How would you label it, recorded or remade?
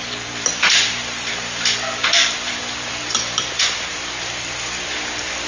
remade